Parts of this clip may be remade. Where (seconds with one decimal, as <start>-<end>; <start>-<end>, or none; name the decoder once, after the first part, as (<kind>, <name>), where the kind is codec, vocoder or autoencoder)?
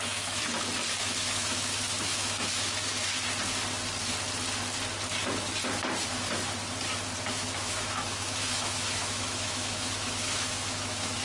0.0-0.4 (autoencoder, DAC-VAE); 1.0-3.1; 7.3-11.2